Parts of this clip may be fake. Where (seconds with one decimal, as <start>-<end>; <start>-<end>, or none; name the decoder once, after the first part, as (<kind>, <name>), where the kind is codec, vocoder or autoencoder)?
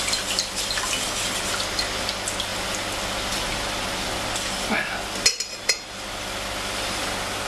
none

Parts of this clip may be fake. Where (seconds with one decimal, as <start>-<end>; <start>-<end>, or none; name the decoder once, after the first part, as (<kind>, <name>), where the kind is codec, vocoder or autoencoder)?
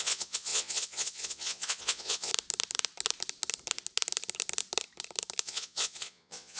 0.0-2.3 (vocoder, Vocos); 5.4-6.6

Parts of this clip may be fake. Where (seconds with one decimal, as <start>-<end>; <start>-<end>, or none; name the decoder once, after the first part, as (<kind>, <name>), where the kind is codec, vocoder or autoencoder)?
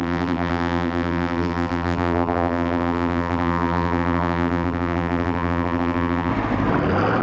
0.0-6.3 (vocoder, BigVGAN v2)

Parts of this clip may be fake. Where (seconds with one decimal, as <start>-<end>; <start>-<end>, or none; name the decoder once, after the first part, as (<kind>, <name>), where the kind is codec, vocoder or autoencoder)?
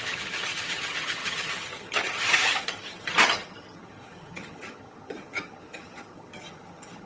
0.0-7.1 (vocoder, HiFi-GAN)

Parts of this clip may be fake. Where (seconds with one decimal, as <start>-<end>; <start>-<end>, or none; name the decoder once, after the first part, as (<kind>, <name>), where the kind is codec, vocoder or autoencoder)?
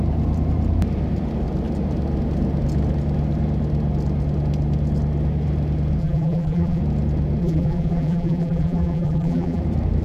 6.0-6.8 (vocoder, BigVGAN v2); 7.4-9.6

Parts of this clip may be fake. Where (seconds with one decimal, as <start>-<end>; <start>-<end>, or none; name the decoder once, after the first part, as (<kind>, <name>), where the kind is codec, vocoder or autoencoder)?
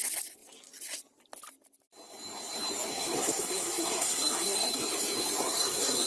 2.9-4.8 (codec, SNAC); 5.4-6.1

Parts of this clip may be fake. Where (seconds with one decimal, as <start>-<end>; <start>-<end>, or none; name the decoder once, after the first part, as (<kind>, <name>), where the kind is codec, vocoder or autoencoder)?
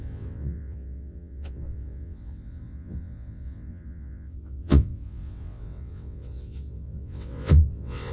0.0-8.1 (vocoder, WaveNeXt)